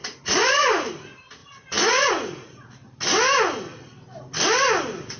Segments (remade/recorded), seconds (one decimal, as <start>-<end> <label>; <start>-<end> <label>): 0.0-2.8 remade; 2.8-5.2 recorded